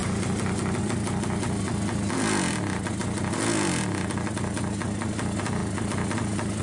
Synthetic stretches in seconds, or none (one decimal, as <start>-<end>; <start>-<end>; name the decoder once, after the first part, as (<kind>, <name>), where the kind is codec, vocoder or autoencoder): none